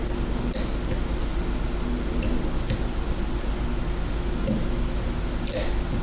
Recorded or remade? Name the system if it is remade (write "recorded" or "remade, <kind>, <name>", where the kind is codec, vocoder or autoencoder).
recorded